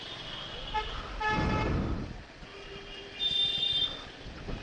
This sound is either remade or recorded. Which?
recorded